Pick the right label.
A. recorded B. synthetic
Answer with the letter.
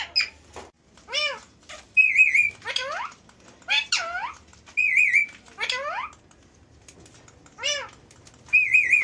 A